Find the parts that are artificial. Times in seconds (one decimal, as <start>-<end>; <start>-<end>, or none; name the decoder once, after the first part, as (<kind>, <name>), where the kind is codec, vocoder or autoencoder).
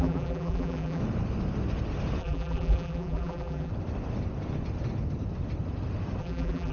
0.0-1.0 (vocoder, BigVGAN v2); 2.2-3.7; 6.2-6.7